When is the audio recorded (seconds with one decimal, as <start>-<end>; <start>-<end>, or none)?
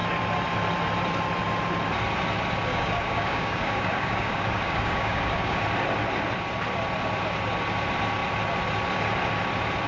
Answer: 0.0-2.7; 5.6-9.9